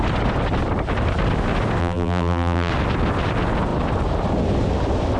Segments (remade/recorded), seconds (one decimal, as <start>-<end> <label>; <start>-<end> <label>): 0.0-1.8 recorded; 1.8-2.7 remade; 2.7-5.2 recorded